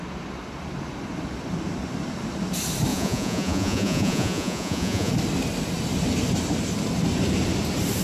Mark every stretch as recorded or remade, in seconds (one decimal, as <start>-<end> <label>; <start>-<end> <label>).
0.0-2.9 recorded; 2.9-5.1 remade; 5.1-8.0 recorded